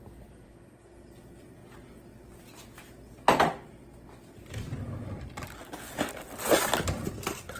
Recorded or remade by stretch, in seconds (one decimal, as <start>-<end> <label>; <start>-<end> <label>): 0.0-7.6 recorded